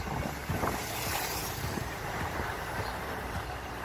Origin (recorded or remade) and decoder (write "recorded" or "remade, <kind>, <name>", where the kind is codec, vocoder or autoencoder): remade, vocoder, BigVGAN v2